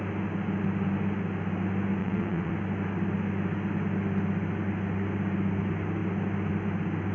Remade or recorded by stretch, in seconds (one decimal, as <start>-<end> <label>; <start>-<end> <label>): 0.0-2.0 recorded; 2.0-2.5 remade; 2.5-7.1 recorded